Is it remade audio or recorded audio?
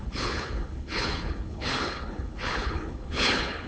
remade